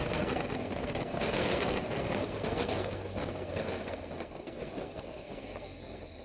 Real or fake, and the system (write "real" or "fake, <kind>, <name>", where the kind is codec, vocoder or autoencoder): fake, codec, SNAC